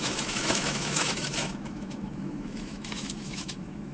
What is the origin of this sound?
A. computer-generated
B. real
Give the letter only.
A